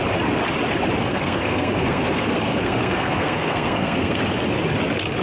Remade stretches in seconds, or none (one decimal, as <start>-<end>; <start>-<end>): 1.1-4.2